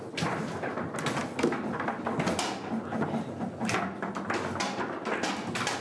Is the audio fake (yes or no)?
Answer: no